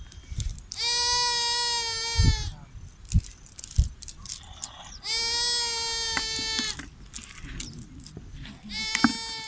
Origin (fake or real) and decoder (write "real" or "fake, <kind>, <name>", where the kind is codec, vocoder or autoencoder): real